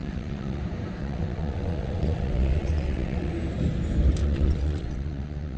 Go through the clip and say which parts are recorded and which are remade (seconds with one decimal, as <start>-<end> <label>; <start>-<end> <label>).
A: 0.0-0.6 remade; 0.6-1.0 recorded; 1.0-3.3 remade; 3.3-4.2 recorded; 4.2-5.6 remade